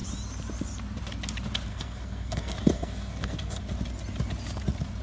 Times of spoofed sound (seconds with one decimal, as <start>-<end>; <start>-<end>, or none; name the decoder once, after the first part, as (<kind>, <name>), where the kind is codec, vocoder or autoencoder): 1.7-3.6 (codec, SNAC)